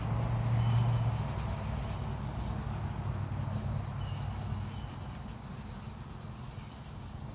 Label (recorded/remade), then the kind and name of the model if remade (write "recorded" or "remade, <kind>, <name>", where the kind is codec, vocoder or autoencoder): recorded